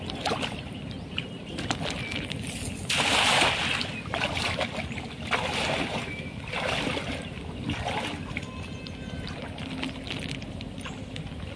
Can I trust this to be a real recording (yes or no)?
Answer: yes